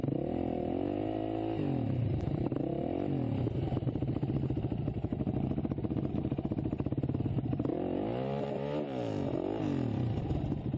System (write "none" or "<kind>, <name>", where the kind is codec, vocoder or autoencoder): none